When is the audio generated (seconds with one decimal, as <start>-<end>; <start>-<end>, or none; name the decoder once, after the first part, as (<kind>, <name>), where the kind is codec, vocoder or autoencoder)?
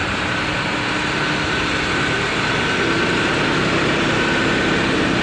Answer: none